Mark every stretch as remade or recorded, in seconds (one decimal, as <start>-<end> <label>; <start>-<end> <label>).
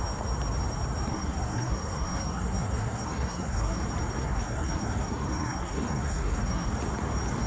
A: 0.0-1.1 recorded; 1.1-3.8 remade; 3.8-4.2 recorded; 4.2-6.7 remade; 6.7-7.5 recorded